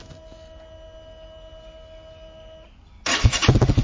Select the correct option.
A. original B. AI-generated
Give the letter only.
A